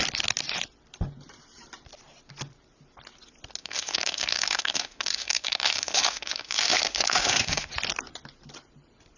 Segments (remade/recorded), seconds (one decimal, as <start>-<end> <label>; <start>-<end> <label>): 0.0-3.6 recorded; 3.6-7.7 remade; 7.7-9.2 recorded